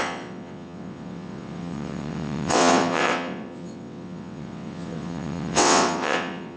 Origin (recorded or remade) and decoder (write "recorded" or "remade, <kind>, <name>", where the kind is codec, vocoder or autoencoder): remade, vocoder, WaveNeXt